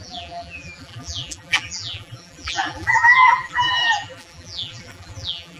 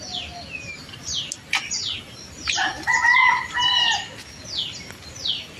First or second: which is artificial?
first